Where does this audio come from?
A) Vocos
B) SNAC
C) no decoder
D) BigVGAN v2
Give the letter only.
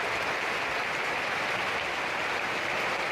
C